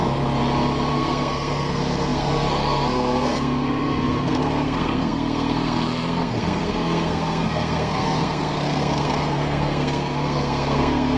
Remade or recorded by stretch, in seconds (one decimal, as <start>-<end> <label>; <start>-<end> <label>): 0.0-0.9 recorded; 0.9-11.2 remade